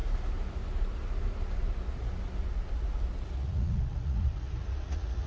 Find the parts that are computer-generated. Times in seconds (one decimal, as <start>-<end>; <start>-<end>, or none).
3.2-5.3